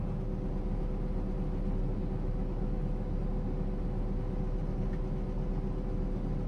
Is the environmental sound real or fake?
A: real